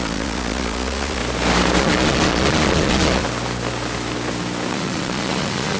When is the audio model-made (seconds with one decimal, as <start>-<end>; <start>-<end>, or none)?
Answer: 0.0-1.2; 1.8-3.2; 4.7-5.8